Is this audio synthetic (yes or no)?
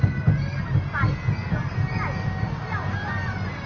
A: no